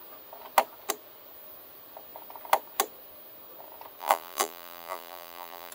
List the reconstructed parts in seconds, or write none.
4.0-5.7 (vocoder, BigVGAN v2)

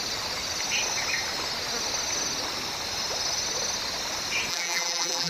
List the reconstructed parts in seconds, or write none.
4.5-5.3 (vocoder, BigVGAN v2)